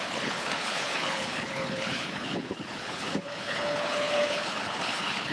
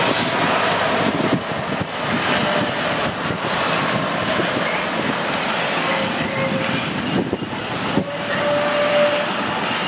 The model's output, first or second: first